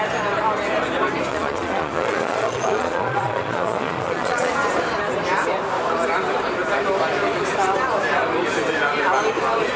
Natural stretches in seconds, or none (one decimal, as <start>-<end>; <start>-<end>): 0.0-1.3; 4.5-9.8